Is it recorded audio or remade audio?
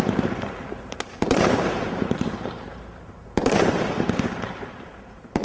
remade